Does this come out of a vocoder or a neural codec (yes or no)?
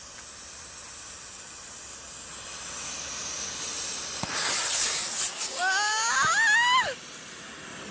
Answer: no